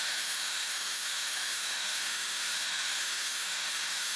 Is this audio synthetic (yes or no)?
yes